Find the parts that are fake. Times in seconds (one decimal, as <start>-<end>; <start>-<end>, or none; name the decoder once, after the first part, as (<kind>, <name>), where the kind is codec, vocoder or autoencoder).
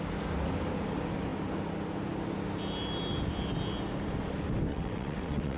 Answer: 4.7-5.6 (vocoder, WaveNeXt)